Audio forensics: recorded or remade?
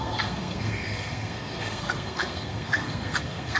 remade